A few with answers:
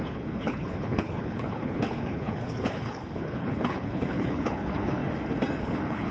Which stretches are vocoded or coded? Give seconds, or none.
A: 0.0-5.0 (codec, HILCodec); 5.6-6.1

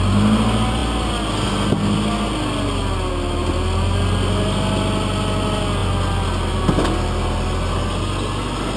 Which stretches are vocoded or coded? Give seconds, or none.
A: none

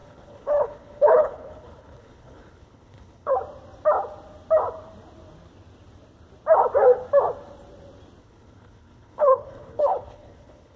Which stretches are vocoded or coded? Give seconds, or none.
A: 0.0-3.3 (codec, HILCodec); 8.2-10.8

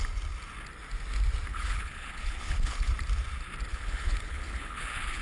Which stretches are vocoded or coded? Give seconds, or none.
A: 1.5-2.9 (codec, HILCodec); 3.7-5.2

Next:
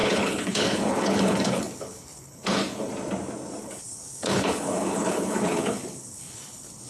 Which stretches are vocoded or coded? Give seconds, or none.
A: 0.0-2.9 (codec, HILCodec); 3.6-6.9